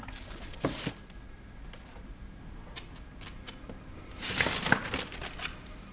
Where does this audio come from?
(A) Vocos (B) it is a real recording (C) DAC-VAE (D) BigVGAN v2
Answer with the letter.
B